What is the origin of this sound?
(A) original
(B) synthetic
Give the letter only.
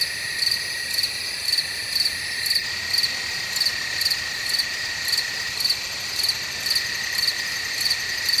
A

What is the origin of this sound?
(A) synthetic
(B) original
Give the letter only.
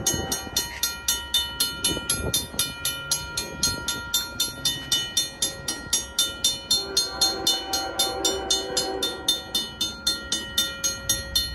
B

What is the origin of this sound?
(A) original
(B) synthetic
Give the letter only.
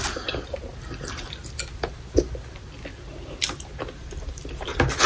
A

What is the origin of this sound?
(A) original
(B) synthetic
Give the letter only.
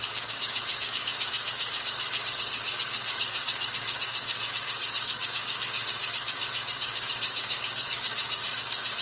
B